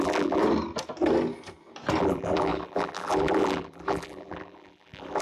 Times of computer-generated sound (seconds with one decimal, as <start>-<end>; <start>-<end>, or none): 0.0-0.4; 2.0-5.2